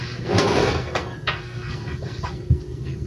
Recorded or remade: remade